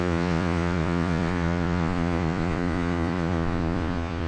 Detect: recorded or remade remade